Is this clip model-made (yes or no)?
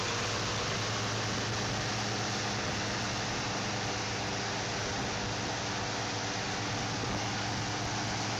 no